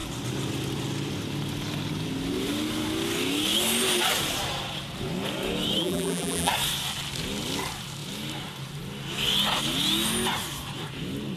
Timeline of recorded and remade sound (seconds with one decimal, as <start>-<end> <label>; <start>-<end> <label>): 0.0-5.8 recorded; 5.8-6.5 remade; 6.5-11.4 recorded